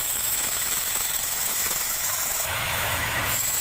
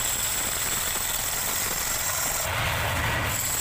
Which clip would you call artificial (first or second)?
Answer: first